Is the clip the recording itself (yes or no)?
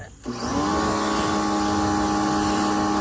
yes